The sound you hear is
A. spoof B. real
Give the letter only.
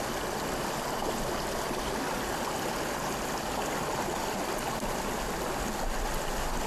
B